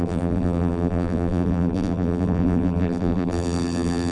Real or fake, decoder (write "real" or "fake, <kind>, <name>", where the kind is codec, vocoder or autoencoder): fake, vocoder, BigVGAN v2